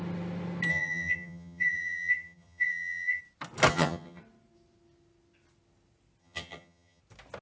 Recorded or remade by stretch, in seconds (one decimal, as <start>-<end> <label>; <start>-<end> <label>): 0.0-0.7 recorded; 0.7-3.2 remade; 3.2-3.7 recorded; 3.7-4.2 remade; 4.2-6.2 recorded; 6.2-7.0 remade; 7.0-7.4 recorded